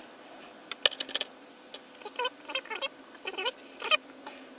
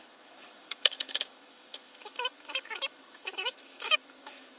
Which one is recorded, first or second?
first